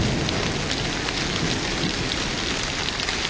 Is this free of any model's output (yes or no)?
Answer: yes